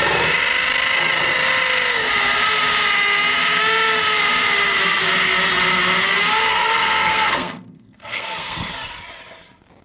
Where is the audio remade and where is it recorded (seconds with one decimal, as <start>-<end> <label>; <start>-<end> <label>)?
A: 0.0-6.5 recorded; 6.5-8.7 remade; 8.7-9.8 recorded